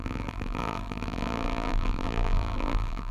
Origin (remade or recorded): remade